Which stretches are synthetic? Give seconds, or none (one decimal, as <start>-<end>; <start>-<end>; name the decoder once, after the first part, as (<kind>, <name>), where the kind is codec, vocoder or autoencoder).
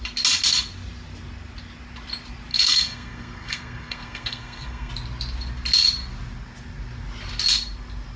2.5-4.9 (codec, SNAC)